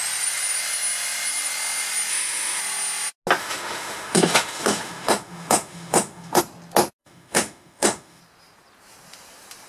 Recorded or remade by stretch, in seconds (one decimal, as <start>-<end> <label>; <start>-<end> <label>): 0.0-2.1 recorded; 2.1-2.6 remade; 2.6-3.4 recorded; 3.4-6.4 remade; 6.4-7.0 recorded; 7.0-8.2 remade; 8.2-9.7 recorded